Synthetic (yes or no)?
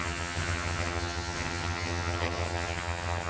yes